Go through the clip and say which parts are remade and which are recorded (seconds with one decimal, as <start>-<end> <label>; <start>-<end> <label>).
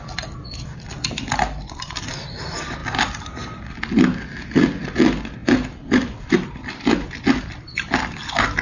0.0-2.8 recorded; 2.8-3.8 remade; 3.8-5.4 recorded; 5.4-8.1 remade; 8.1-8.6 recorded